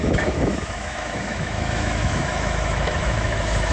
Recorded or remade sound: remade